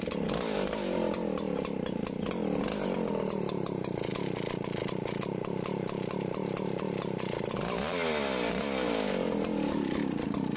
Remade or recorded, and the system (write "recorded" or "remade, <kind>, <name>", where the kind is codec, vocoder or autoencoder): recorded